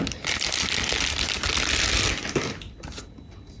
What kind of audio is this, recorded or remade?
recorded